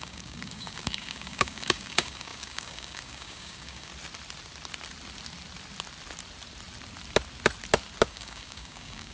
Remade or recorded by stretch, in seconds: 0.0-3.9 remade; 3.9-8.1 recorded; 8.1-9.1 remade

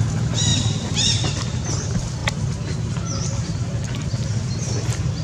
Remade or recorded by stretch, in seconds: 0.0-2.2 remade; 2.2-2.9 recorded; 2.9-5.2 remade

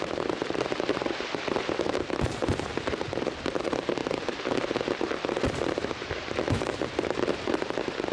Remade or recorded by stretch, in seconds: 0.0-2.4 remade; 2.4-3.6 recorded; 3.6-8.1 remade

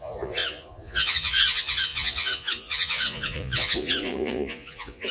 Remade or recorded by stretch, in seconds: 0.0-5.1 remade

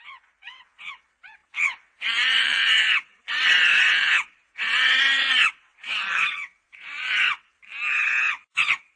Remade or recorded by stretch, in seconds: 0.0-7.6 remade; 7.6-8.3 recorded; 8.3-9.0 remade

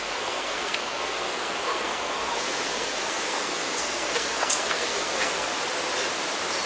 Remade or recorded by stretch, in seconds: 0.0-5.5 remade; 5.5-6.7 recorded

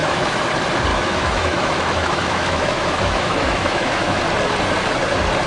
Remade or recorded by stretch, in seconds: 0.0-0.5 remade; 0.5-0.9 recorded; 0.9-4.2 remade; 4.2-5.5 recorded